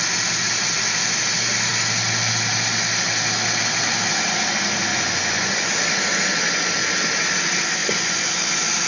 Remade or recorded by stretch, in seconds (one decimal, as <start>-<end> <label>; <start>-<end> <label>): 0.0-4.9 recorded; 4.9-5.7 remade; 5.7-7.8 recorded; 7.8-8.5 remade; 8.5-8.9 recorded